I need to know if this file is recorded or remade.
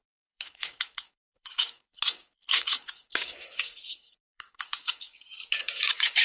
remade